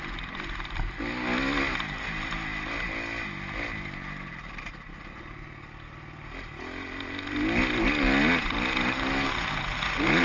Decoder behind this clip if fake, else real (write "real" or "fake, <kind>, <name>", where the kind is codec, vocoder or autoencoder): real